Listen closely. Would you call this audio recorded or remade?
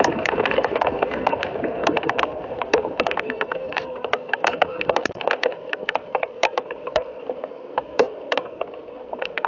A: remade